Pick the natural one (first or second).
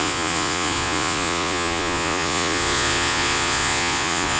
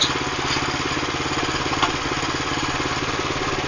second